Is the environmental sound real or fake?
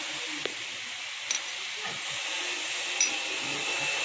real